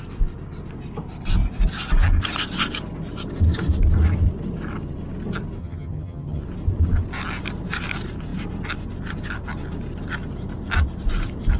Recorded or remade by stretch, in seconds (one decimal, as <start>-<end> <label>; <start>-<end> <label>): 0.0-5.6 recorded; 5.6-6.4 remade; 6.4-11.6 recorded